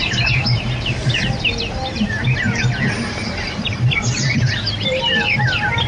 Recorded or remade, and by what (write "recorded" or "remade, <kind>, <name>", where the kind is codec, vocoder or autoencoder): remade, vocoder, BigVGAN v2